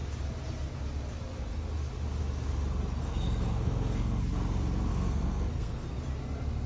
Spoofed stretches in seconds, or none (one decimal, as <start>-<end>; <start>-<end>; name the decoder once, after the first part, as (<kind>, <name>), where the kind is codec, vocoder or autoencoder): 3.0-4.2 (codec, SNAC); 4.9-6.0